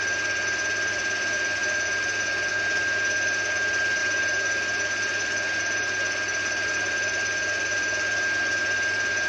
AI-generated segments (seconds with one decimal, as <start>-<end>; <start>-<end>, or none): none